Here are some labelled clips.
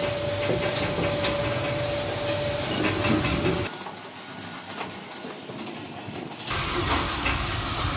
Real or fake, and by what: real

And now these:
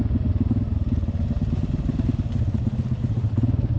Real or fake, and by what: real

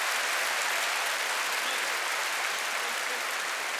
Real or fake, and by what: real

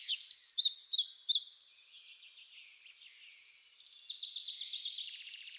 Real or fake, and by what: real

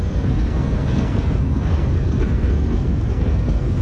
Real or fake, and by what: fake, codec, SNAC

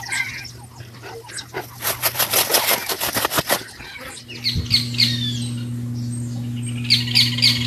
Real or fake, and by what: real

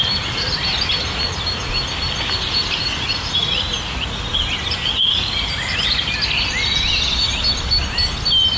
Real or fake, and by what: real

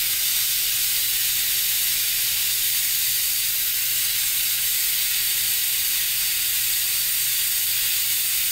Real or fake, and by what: real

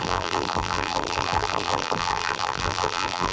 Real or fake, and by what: fake, vocoder, BigVGAN v2